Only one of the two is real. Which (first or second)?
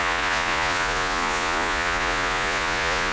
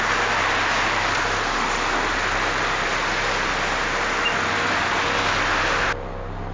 second